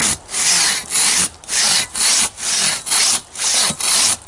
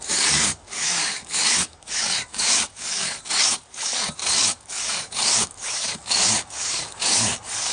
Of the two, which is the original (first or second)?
first